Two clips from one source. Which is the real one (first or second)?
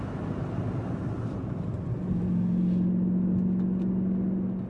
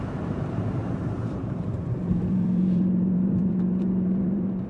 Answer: first